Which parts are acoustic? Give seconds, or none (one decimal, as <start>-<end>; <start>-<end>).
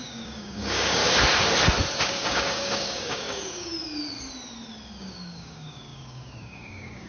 1.0-2.0; 3.7-5.0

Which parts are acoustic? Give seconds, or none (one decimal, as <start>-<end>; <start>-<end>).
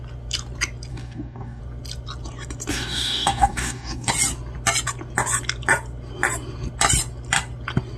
0.0-0.9; 1.6-2.7; 4.1-8.0